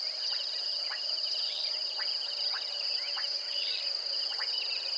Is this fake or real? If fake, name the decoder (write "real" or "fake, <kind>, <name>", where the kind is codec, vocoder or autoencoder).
real